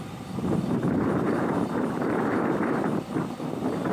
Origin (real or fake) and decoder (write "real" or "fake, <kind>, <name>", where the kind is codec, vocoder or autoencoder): fake, vocoder, BigVGAN v2